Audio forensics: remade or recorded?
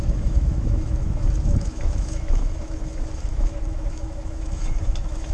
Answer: remade